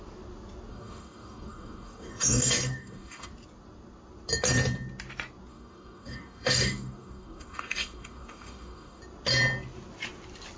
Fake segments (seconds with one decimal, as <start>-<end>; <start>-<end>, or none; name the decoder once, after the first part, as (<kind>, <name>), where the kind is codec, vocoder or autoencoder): 0.7-3.3 (codec, DAC); 5.5-9.0